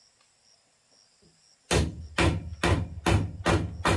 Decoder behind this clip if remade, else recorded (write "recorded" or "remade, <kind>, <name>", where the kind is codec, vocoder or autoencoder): recorded